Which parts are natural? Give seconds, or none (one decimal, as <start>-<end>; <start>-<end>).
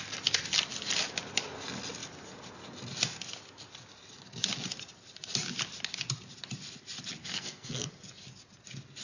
0.0-7.2; 7.9-9.0